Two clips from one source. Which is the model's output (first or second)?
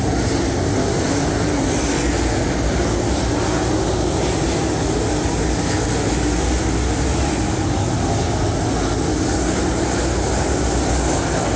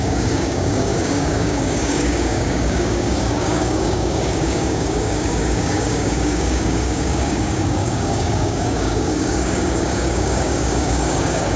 second